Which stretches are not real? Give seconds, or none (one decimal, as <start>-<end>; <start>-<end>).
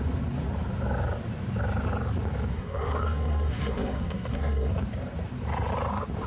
2.5-4.7